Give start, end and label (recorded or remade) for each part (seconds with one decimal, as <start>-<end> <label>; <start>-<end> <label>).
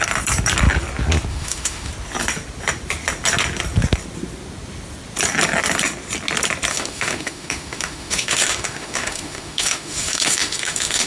0.0-1.3 recorded; 1.3-1.9 remade; 1.9-6.7 recorded; 6.7-11.1 remade